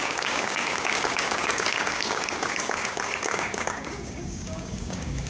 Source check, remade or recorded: remade